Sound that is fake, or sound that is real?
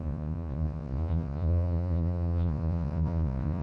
fake